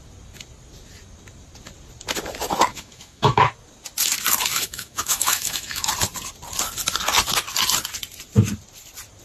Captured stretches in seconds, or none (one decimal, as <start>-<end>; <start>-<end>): 0.0-2.7; 3.5-4.5; 5.9-9.2